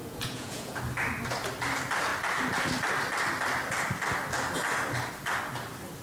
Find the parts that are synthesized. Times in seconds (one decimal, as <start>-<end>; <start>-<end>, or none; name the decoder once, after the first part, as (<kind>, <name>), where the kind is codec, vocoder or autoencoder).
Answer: 0.0-0.8 (vocoder, Vocos)